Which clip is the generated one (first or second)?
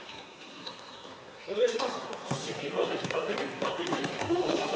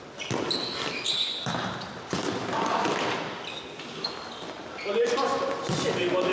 first